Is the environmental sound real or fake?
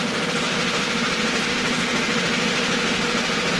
real